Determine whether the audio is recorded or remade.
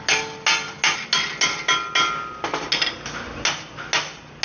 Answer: recorded